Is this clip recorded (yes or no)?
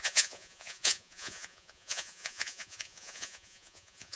no